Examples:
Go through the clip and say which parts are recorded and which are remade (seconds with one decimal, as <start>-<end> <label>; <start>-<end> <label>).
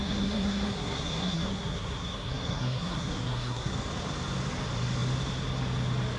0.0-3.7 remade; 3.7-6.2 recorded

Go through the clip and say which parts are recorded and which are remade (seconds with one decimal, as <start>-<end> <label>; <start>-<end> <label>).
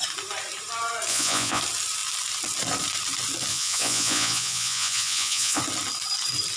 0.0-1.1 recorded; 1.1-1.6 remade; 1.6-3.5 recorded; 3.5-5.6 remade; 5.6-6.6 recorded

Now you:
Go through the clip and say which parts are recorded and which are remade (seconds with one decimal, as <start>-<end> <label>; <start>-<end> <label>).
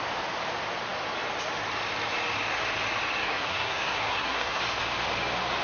0.0-3.2 recorded; 3.2-4.6 remade; 4.6-5.6 recorded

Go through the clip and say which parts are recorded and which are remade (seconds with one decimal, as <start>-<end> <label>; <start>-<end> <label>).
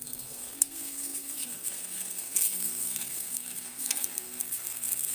0.0-5.1 remade